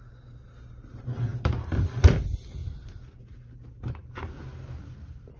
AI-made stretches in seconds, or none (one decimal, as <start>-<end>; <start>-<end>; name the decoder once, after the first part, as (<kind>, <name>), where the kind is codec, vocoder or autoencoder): 1.3-2.0 (vocoder, BigVGAN v2)